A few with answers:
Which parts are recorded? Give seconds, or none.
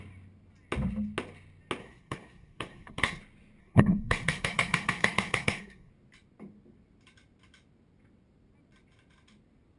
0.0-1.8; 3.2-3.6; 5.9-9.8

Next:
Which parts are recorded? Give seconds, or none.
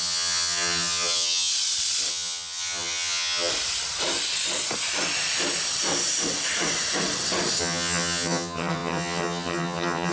1.5-2.1; 3.5-7.6